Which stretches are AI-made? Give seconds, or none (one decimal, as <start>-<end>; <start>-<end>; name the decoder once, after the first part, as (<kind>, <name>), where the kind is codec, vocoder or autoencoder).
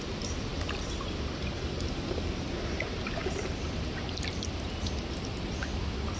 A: none